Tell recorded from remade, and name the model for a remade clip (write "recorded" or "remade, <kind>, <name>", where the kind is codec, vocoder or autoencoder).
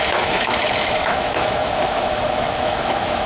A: remade, autoencoder, DAC-VAE